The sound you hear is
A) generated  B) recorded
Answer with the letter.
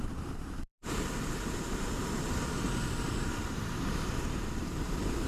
A